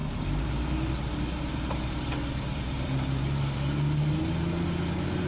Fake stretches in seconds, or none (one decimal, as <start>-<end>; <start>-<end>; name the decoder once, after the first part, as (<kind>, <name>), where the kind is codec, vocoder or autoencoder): 0.0-3.2 (vocoder, BigVGAN v2)